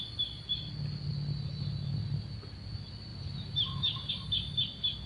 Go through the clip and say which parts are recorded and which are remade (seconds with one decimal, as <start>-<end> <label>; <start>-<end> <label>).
0.0-3.1 recorded; 3.1-4.1 remade; 4.1-5.1 recorded